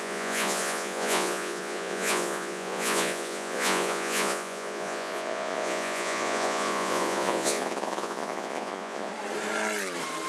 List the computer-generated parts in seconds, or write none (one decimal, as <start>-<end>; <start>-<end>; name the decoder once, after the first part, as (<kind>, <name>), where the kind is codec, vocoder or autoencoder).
0.0-9.1 (vocoder, Vocos)